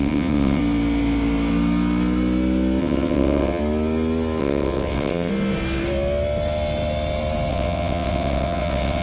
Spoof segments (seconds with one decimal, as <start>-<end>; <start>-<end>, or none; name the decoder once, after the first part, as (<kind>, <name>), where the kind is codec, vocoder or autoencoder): 0.0-0.6 (vocoder, WaveNeXt); 2.8-3.6; 4.4-5.3; 7.5-9.0